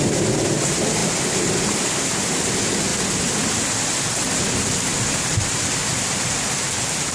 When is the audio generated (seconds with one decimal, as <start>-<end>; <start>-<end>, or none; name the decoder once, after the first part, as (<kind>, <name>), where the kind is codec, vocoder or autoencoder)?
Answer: none